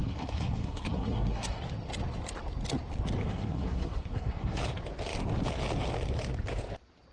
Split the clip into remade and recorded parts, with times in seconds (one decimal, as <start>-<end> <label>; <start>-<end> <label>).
0.0-1.6 remade; 1.6-3.2 recorded; 3.2-4.6 remade; 4.6-7.1 recorded